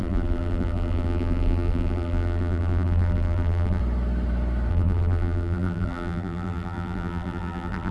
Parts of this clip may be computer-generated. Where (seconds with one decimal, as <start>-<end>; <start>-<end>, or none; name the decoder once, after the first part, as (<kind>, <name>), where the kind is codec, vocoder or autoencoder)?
0.0-3.8 (vocoder, BigVGAN v2); 4.7-7.9